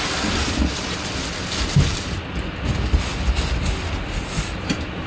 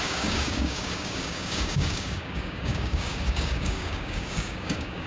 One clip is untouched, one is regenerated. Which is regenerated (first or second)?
second